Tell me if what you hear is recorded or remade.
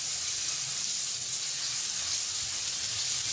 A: recorded